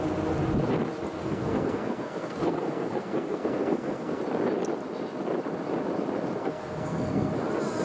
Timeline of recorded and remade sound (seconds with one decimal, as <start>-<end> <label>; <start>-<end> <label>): 0.0-1.2 recorded; 1.2-4.2 remade; 4.2-6.4 recorded; 6.4-7.3 remade; 7.3-7.8 recorded